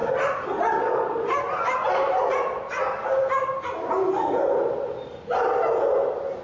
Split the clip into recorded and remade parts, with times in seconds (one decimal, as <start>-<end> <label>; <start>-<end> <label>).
0.0-6.4 recorded